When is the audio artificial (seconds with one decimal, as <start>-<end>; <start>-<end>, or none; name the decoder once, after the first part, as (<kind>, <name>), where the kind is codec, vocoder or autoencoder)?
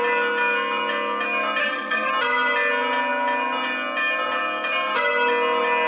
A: 1.6-2.1 (codec, SNAC)